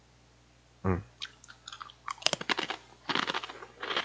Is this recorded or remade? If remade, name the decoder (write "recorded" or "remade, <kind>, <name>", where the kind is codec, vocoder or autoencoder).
recorded